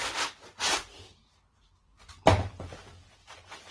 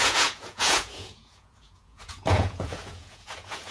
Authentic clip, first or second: first